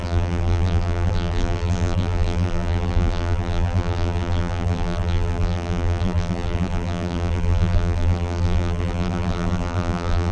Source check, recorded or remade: remade